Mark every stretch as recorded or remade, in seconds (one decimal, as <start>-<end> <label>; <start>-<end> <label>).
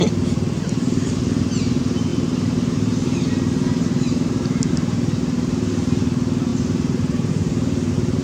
0.0-2.1 recorded; 2.1-4.7 remade; 4.7-6.5 recorded; 6.5-7.3 remade; 7.3-8.2 recorded